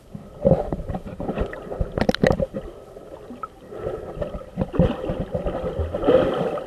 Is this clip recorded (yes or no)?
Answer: yes